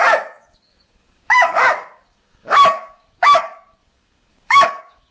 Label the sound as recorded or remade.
remade